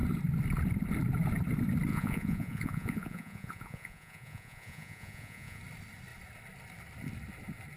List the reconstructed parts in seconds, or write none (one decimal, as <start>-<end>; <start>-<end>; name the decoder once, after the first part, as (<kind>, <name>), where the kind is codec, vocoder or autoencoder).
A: 1.9-5.6 (vocoder, Vocos)